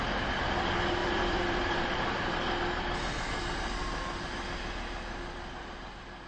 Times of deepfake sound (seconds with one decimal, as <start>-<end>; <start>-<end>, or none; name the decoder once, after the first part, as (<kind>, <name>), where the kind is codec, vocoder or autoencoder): 1.0-2.3 (vocoder, BigVGAN v2)